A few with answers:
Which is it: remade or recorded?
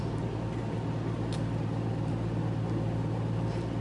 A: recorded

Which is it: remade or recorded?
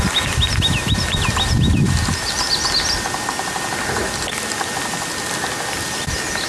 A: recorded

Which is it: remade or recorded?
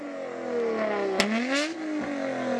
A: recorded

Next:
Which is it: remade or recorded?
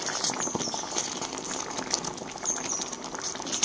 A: recorded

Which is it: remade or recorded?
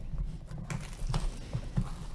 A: recorded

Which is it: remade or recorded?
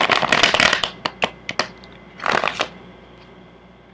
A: recorded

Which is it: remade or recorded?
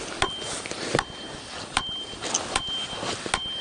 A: recorded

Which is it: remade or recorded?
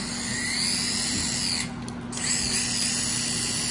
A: recorded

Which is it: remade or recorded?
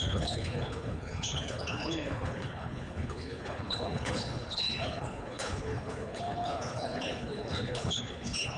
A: remade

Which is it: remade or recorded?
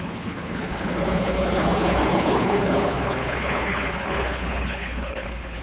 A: remade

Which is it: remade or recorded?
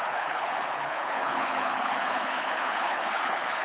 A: remade